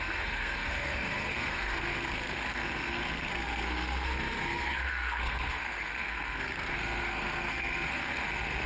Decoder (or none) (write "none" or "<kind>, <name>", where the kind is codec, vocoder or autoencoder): codec, SNAC